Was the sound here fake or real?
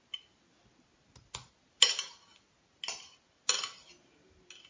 real